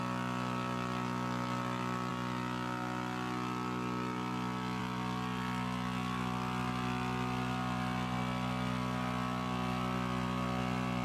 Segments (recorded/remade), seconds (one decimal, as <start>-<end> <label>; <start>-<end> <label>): 0.0-11.0 recorded

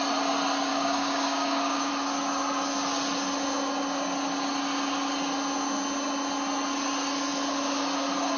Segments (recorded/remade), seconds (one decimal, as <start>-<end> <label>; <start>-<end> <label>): 0.0-0.7 recorded; 0.7-1.9 remade; 1.9-8.4 recorded

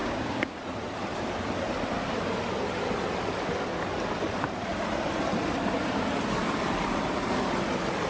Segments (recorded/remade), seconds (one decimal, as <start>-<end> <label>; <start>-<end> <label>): 0.0-0.6 remade; 0.6-8.1 recorded

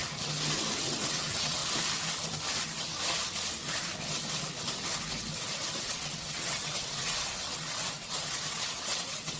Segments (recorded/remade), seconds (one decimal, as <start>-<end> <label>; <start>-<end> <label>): 0.0-0.8 recorded; 0.8-1.6 remade; 1.6-5.8 recorded; 5.8-9.4 remade

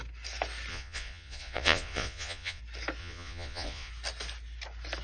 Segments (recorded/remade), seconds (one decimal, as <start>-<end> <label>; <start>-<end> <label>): 0.0-0.7 recorded; 0.7-2.6 remade; 2.6-3.0 recorded; 3.0-3.9 remade; 3.9-5.0 recorded

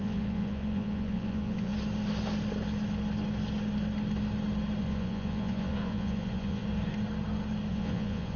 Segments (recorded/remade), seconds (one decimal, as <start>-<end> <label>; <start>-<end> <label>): 0.0-1.7 remade; 1.7-4.8 recorded; 4.8-6.6 remade; 6.6-7.7 recorded; 7.7-8.4 remade

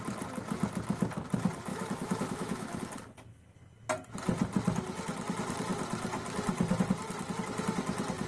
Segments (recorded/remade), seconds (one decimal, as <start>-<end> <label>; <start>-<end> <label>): 0.0-1.7 recorded; 1.7-2.8 remade; 2.8-8.3 recorded

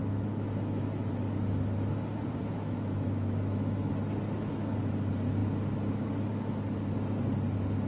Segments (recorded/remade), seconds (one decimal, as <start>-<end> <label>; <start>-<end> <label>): 0.0-1.1 remade; 1.1-2.4 recorded; 2.4-3.9 remade; 3.9-7.9 recorded